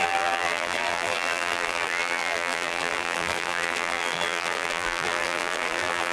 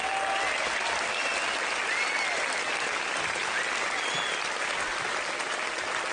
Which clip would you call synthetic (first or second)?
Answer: first